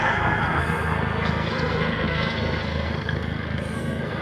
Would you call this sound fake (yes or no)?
yes